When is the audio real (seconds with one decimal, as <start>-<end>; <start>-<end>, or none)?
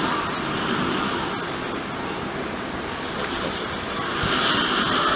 0.0-5.2